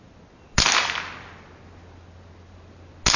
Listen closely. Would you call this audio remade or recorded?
recorded